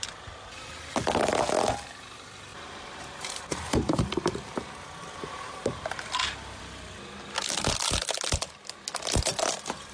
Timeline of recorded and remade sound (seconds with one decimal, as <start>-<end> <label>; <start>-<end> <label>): 0.0-2.5 recorded; 2.5-4.5 remade; 4.5-9.9 recorded